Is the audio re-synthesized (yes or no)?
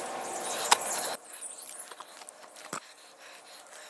no